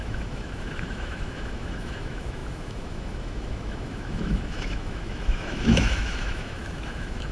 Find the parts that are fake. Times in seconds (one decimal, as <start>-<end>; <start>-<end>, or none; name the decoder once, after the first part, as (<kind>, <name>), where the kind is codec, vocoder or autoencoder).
0.0-7.3 (autoencoder, DAC-VAE)